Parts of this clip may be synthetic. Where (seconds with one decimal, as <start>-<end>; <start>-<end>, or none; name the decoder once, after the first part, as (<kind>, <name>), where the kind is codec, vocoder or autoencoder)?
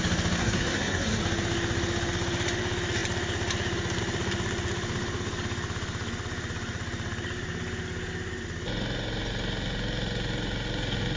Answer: 0.4-1.2 (codec, SNAC)